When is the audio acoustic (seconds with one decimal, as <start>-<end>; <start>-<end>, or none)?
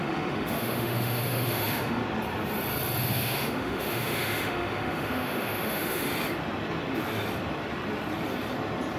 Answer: 2.0-3.0; 6.1-9.0